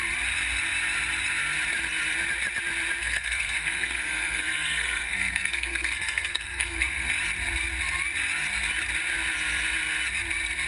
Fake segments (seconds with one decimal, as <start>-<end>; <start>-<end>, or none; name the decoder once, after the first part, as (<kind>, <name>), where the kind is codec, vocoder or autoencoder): 3.0-7.1 (codec, SNAC)